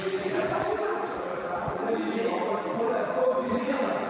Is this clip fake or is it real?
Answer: fake